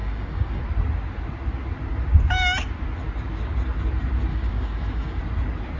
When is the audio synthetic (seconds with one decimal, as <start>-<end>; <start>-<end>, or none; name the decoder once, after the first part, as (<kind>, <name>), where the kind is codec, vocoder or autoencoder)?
0.0-0.6 (codec, DAC); 4.3-5.2